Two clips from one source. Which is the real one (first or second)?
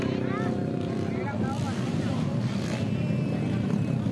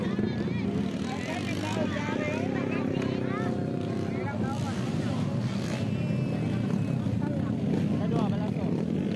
second